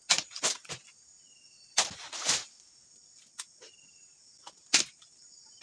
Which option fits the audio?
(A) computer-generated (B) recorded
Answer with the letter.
B